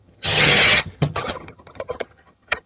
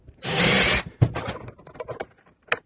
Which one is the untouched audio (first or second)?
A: second